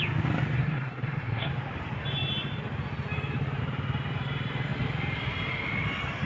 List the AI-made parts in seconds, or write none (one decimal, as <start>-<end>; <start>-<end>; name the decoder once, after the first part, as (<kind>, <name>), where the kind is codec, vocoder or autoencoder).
0.6-1.5 (codec, SNAC)